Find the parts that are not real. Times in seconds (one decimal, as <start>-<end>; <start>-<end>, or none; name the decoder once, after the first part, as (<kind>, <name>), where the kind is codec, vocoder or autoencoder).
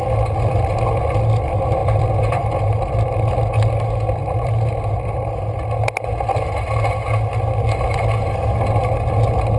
1.8-2.6 (vocoder, BigVGAN v2); 4.2-5.3